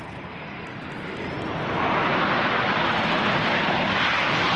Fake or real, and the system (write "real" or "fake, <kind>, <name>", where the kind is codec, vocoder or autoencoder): real